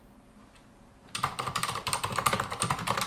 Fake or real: fake